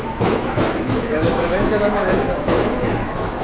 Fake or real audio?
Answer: fake